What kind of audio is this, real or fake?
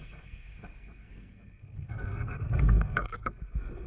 fake